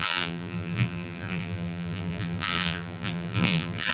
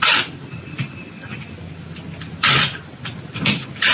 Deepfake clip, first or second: first